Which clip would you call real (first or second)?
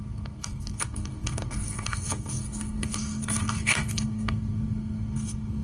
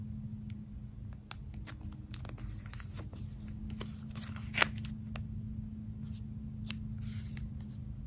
second